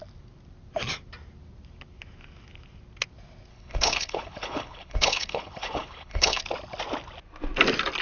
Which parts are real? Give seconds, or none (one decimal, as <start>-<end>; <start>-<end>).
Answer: 0.0-3.5; 6.4-8.0